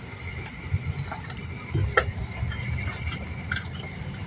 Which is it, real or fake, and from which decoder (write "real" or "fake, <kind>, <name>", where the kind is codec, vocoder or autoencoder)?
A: fake, vocoder, BigVGAN v2